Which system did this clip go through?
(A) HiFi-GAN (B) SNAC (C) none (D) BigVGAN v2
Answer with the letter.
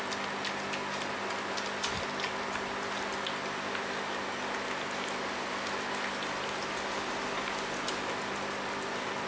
C